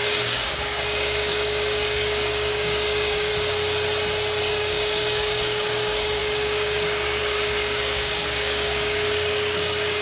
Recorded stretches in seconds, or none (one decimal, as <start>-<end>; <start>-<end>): 3.3-4.4

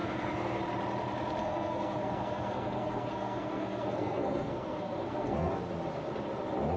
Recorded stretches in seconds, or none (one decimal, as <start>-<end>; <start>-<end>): 0.6-1.4; 5.5-6.8

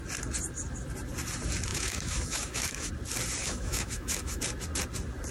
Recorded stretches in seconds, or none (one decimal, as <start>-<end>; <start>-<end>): 0.0-1.7; 2.9-3.4; 4.4-5.3

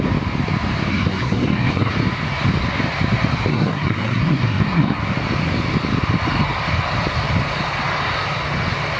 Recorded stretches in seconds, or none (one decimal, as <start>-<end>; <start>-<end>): 0.0-0.9; 1.9-3.5; 5.0-9.0

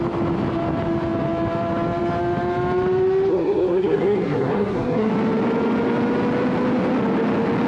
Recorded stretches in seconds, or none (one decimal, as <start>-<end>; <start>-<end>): 0.0-3.3; 5.1-7.7

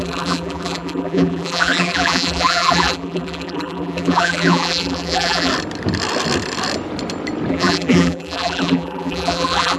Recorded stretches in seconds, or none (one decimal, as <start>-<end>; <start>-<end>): 5.5-7.5

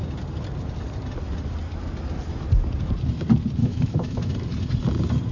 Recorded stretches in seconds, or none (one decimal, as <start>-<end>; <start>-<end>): 0.0-3.6; 4.3-5.3